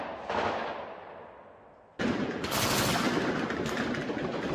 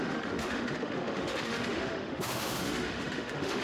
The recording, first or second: first